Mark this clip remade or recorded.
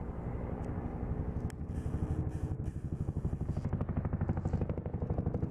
recorded